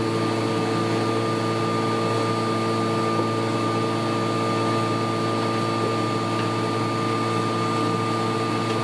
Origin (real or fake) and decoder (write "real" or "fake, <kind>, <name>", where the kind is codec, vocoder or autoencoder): real